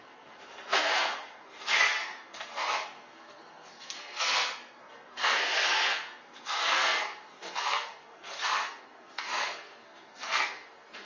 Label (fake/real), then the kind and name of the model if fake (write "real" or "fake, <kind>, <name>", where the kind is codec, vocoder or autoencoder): fake, codec, SNAC